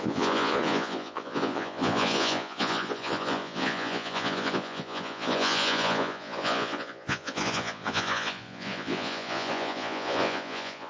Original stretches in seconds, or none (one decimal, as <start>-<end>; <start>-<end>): none